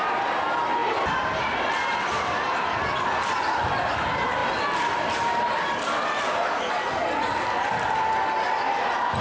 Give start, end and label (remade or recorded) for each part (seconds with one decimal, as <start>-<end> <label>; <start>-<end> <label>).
0.0-9.2 recorded